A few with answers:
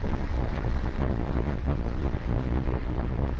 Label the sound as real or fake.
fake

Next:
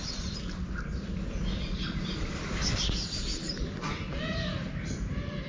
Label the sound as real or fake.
real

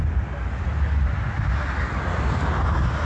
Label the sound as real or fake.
real